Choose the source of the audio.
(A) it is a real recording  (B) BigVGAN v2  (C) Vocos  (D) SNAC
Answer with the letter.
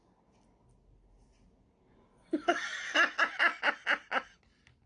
A